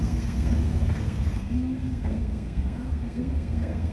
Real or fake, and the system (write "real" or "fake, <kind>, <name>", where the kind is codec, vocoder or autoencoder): fake, codec, SNAC